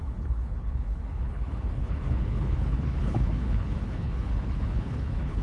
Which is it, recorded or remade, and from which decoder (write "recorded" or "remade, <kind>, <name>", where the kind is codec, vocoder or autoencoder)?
remade, codec, HILCodec